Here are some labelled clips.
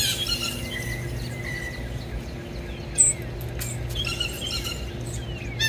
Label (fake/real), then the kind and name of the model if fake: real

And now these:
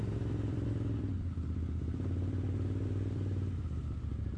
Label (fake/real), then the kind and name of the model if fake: fake, vocoder, BigVGAN v2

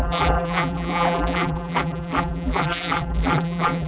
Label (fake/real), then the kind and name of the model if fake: fake, vocoder, BigVGAN v2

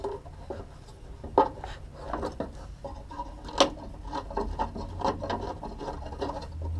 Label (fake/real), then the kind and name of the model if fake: real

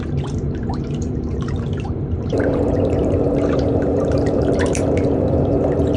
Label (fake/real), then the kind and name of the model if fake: fake, vocoder, BigVGAN v2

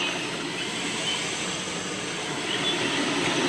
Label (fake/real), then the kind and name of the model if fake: real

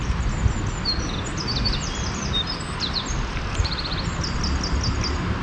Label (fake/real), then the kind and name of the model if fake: real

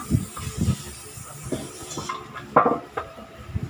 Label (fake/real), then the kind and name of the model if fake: fake, vocoder, BigVGAN v2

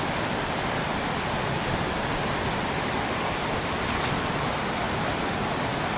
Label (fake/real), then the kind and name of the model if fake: fake, vocoder, BigVGAN v2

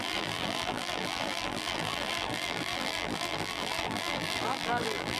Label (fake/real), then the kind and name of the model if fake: fake, vocoder, BigVGAN v2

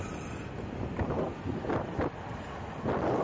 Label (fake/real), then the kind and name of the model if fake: real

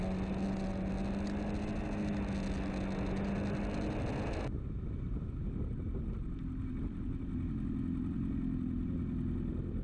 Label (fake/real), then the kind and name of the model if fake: real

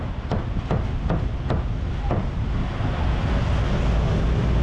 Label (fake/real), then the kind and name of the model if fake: real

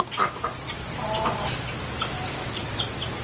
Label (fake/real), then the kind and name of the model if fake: real